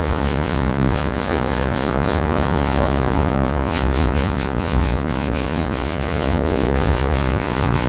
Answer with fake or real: fake